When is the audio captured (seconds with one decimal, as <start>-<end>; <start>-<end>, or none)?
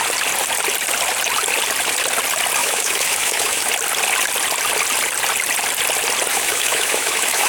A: 0.0-2.6; 3.7-6.3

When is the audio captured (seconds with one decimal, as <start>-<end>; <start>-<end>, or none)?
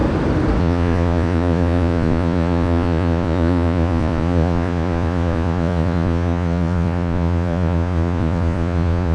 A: 0.0-0.6